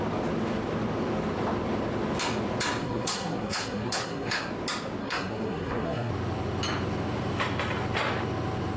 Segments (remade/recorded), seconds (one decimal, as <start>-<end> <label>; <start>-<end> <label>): 0.0-2.8 recorded; 2.8-4.5 remade; 4.5-5.0 recorded; 5.0-6.1 remade; 6.1-8.8 recorded